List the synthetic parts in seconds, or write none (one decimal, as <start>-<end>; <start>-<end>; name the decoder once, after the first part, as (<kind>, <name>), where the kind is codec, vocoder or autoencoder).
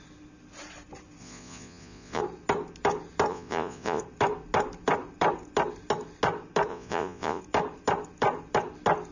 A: 1.2-2.2 (vocoder, Vocos); 3.3-4.0; 6.7-7.4